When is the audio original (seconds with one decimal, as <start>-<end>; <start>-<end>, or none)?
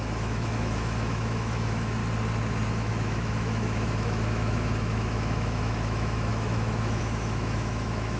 2.0-2.7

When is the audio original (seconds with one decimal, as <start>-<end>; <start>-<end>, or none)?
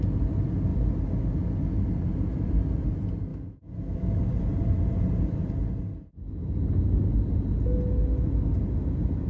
0.0-3.3; 4.2-9.3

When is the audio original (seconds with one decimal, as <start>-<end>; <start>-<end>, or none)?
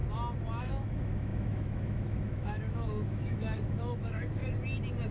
0.0-0.6; 4.4-5.1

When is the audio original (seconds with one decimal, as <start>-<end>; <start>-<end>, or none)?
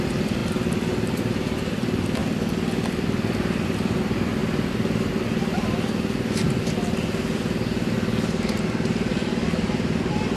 0.0-10.4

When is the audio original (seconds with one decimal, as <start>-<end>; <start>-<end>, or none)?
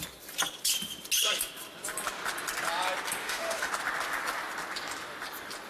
0.0-3.2; 3.7-5.7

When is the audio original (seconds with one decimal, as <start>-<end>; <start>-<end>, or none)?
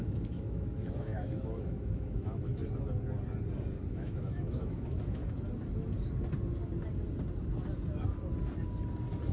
2.6-3.9; 5.2-9.3